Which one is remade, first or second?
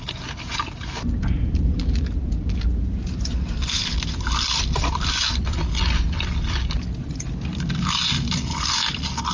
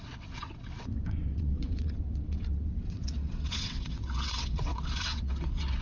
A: second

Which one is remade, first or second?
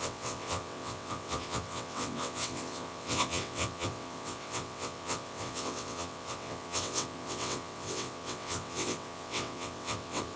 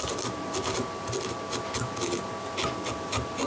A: first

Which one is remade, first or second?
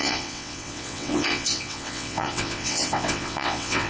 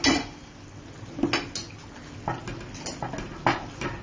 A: first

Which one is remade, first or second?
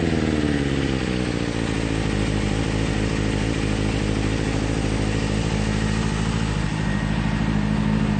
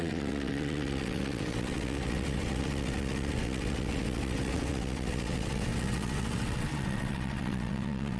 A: second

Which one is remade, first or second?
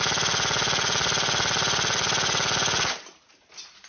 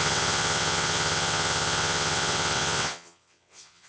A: second